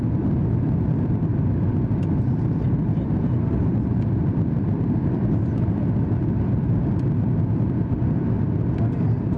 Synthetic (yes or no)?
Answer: yes